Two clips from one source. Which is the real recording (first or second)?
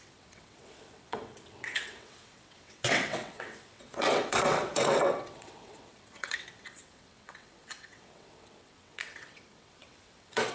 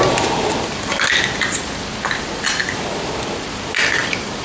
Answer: second